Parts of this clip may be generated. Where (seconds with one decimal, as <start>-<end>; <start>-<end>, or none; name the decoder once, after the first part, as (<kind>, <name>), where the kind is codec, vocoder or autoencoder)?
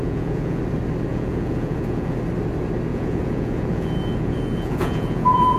0.0-0.6 (vocoder, Vocos); 1.1-2.2; 2.9-5.6